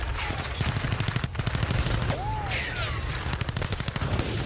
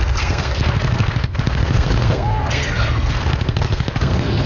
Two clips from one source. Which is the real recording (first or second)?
first